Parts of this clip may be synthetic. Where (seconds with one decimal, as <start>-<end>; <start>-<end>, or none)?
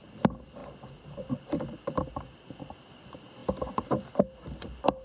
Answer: none